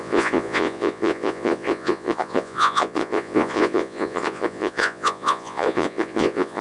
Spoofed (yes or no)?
yes